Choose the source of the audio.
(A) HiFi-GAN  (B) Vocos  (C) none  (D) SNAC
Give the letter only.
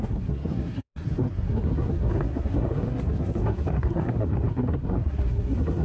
D